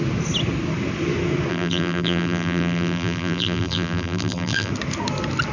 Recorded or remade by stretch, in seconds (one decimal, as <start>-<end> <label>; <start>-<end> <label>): 0.0-1.5 recorded; 1.5-4.7 remade; 4.7-5.5 recorded